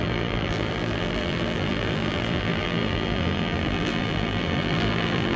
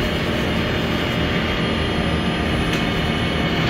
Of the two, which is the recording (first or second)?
second